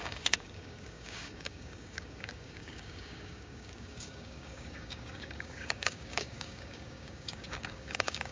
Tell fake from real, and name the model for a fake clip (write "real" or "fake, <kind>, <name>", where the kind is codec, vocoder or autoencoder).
fake, codec, DAC